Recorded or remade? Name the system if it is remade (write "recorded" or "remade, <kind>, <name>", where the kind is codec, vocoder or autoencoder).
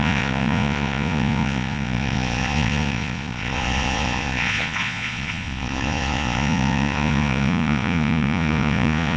remade, vocoder, Vocos